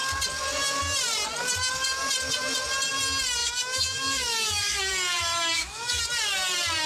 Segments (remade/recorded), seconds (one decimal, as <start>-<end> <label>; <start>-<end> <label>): 0.0-3.4 recorded; 3.4-4.8 remade; 4.8-5.2 recorded; 5.2-6.0 remade; 6.0-6.9 recorded